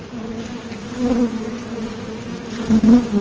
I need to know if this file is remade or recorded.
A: recorded